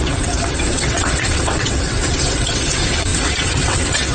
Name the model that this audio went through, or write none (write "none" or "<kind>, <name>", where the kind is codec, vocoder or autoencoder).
vocoder, WaveNeXt